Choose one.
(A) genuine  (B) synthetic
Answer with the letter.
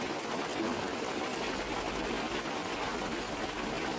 A